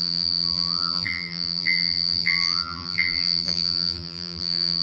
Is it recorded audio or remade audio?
remade